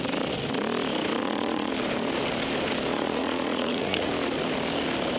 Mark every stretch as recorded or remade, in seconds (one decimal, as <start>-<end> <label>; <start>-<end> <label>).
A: 0.0-1.2 recorded; 1.2-1.7 remade; 1.7-2.9 recorded; 2.9-4.1 remade; 4.1-5.2 recorded